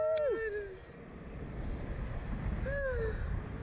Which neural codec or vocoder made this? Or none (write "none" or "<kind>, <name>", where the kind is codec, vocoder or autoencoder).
none